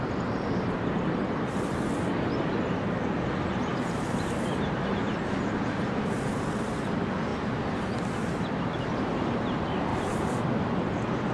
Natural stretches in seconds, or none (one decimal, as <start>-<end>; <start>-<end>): 0.0-3.7; 5.9-11.3